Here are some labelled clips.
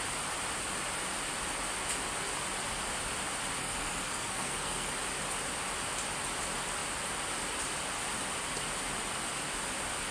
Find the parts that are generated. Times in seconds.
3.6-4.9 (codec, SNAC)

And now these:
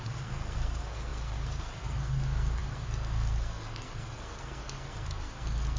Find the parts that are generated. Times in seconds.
0.0-5.8 (codec, SNAC)

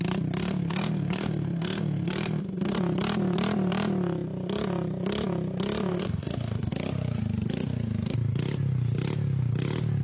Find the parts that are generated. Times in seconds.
0.4-2.8 (codec, SNAC); 5.9-6.7